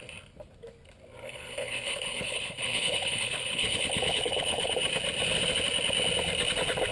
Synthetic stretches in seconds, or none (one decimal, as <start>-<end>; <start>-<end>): 1.2-4.7

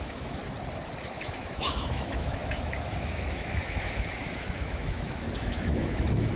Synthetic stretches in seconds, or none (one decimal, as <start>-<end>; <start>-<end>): 0.0-0.4; 1.0-6.4